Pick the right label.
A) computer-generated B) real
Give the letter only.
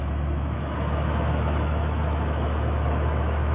A